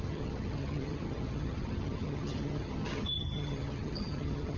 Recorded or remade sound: remade